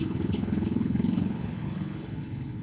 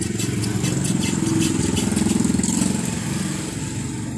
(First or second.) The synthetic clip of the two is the first